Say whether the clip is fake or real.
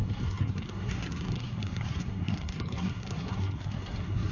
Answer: fake